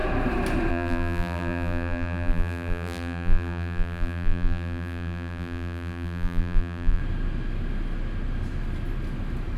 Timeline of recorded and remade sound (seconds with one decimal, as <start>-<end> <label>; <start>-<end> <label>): 0.0-0.7 recorded; 0.7-7.0 remade; 7.0-9.6 recorded